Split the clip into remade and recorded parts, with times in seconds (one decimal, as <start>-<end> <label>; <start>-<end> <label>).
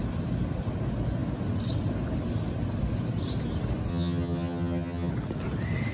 0.0-3.9 recorded; 3.9-5.1 remade; 5.1-5.9 recorded